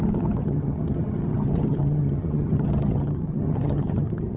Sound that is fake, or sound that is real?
fake